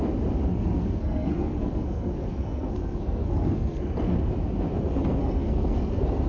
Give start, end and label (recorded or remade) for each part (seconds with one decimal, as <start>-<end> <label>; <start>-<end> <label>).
0.0-0.5 recorded; 0.5-4.3 remade; 4.3-4.7 recorded; 4.7-6.3 remade